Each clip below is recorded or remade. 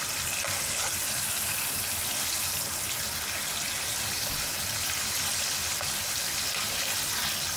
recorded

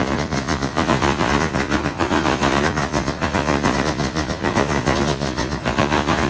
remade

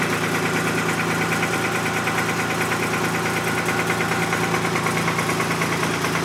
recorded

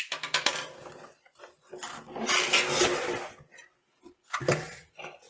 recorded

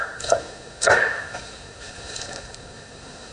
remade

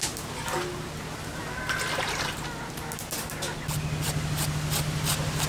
recorded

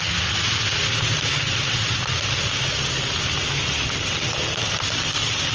recorded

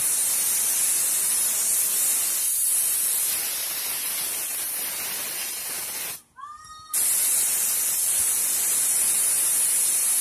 recorded